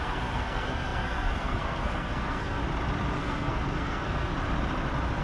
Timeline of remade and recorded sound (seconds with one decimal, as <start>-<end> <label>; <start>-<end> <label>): 0.0-2.6 remade; 2.6-3.2 recorded; 3.2-4.3 remade; 4.3-5.2 recorded